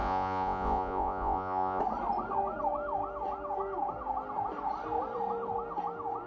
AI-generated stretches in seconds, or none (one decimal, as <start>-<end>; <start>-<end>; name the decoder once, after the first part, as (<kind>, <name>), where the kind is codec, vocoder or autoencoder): 0.0-1.8 (vocoder, Vocos)